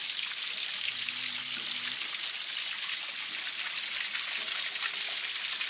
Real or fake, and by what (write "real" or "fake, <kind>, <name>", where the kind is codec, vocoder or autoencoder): real